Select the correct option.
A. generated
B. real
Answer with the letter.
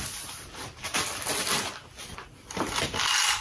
B